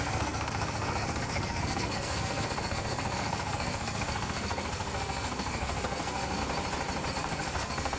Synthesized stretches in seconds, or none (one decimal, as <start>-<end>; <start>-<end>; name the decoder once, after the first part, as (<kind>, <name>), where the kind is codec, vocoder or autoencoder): 0.0-6.4 (codec, SNAC); 7.1-8.0